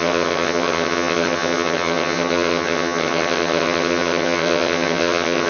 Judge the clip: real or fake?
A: fake